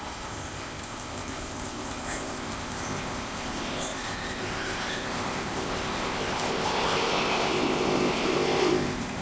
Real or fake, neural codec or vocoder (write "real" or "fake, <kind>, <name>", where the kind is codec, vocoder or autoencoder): fake, codec, ZipCodec